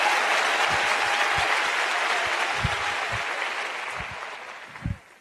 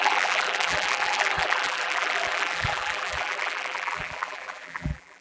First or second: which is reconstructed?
second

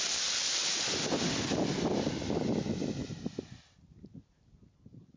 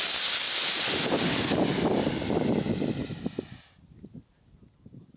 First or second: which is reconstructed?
first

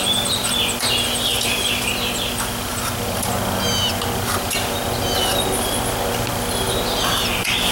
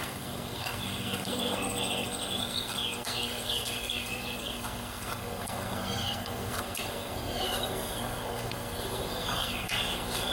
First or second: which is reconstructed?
second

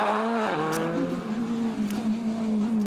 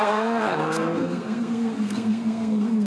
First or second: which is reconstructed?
second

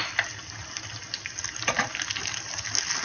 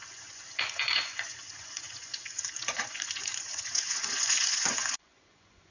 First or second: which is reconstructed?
second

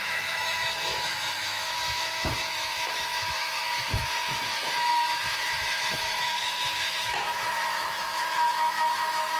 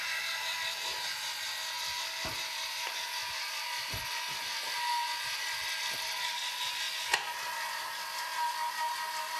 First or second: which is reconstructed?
first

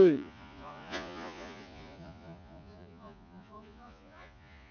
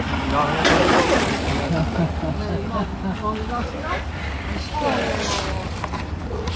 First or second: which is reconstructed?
first